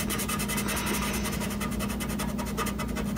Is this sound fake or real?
real